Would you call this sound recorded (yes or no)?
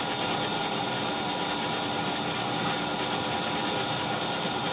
yes